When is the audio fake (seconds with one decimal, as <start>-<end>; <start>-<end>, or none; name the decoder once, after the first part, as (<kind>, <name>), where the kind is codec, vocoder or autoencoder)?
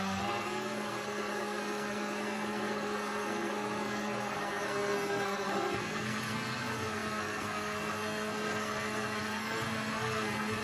0.0-10.6 (codec, SNAC)